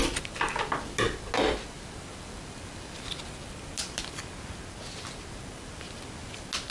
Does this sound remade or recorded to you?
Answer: recorded